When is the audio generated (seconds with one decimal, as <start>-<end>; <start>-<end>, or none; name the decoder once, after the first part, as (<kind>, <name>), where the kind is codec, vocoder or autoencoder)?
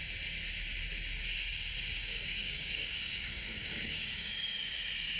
2.0-4.3 (codec, DAC)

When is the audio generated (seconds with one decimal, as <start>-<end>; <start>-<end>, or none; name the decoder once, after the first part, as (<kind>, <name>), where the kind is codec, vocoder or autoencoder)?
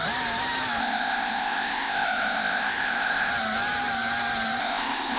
0.8-3.3 (codec, ZipCodec); 4.6-5.2